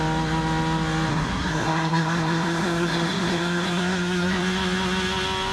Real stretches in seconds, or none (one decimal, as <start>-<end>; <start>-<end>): 0.0-1.1; 4.4-5.5